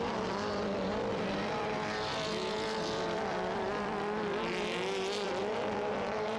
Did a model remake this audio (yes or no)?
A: yes